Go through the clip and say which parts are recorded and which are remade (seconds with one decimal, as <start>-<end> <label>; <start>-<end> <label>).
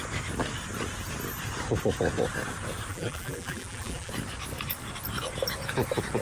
0.0-2.9 recorded; 2.9-4.1 remade; 4.1-6.2 recorded